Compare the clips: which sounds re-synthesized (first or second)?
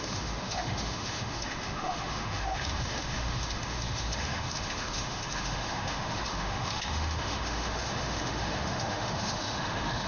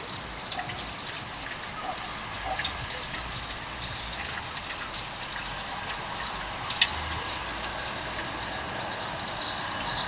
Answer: first